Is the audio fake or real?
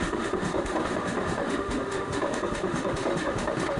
fake